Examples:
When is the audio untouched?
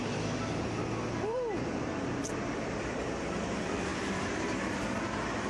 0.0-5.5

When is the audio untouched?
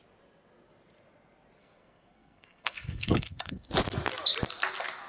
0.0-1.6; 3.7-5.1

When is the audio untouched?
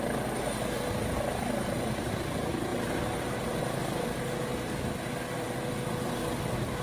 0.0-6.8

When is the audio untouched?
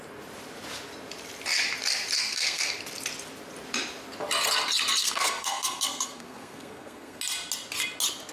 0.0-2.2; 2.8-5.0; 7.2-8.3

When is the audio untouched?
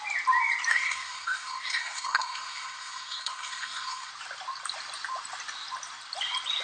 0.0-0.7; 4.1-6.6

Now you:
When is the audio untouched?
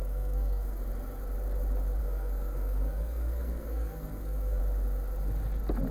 0.8-2.0; 4.6-5.9